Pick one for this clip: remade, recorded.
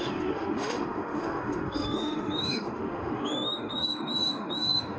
remade